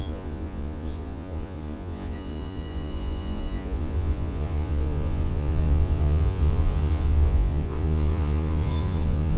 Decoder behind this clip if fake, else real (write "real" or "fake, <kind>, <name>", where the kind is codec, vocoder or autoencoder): fake, vocoder, Vocos